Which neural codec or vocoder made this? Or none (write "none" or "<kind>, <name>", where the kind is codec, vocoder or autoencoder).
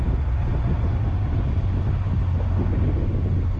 none